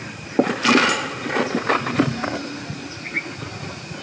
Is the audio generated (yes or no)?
no